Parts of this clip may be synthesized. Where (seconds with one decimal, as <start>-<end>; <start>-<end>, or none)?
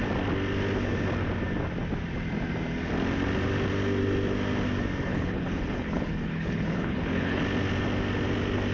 5.1-7.4